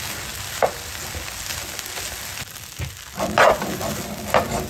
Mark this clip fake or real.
real